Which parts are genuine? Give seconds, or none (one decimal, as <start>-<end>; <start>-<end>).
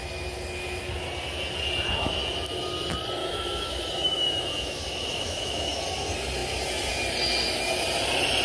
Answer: 0.0-3.2; 5.8-8.4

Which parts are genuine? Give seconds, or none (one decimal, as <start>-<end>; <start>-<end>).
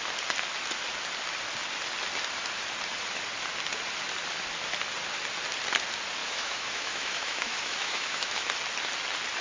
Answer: 0.0-6.2; 8.5-9.4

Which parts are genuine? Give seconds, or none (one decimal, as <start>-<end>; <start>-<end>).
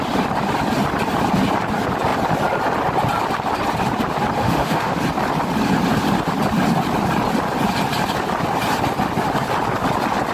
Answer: 0.0-4.4; 4.9-10.3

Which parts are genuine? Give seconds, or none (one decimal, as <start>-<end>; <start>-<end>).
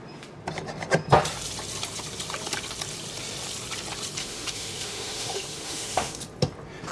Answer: 0.0-4.2; 6.2-6.9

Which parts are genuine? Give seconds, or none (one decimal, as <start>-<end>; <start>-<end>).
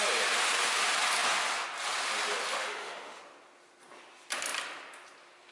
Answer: 0.0-2.5; 3.2-5.5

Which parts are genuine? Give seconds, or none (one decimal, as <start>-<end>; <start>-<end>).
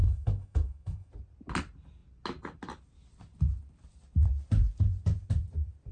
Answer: 1.1-5.9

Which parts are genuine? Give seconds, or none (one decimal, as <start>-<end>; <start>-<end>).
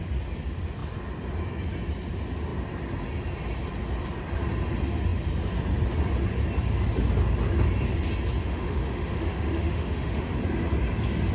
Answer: 0.0-8.4; 10.4-11.3